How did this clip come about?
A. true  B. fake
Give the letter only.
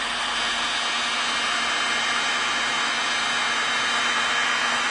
A